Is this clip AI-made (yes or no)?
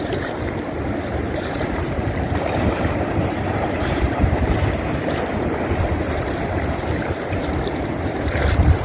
yes